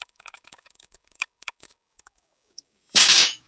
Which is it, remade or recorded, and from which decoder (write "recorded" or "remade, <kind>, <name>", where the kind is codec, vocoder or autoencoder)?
remade, codec, DAC